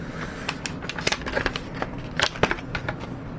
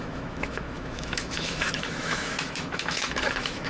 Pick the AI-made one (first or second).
second